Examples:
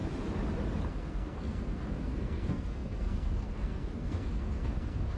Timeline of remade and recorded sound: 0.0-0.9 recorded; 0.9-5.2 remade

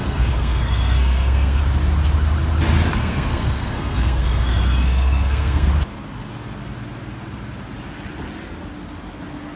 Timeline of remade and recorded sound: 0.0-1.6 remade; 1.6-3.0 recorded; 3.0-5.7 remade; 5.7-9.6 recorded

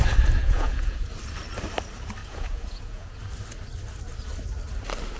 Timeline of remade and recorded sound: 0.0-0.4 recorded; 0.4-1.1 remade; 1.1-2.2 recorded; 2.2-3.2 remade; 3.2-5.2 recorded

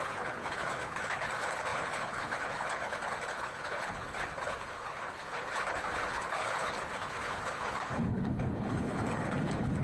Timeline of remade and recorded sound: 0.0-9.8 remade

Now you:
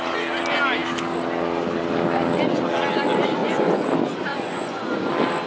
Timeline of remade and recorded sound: 0.0-3.4 recorded; 3.4-3.9 remade; 3.9-4.3 recorded; 4.3-5.1 remade; 5.1-5.5 recorded